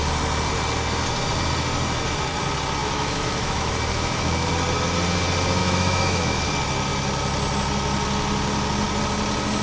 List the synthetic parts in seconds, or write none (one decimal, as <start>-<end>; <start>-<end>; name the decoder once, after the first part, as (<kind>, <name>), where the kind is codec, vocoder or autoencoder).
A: 2.8-4.5 (autoencoder, DAC-VAE); 5.6-6.4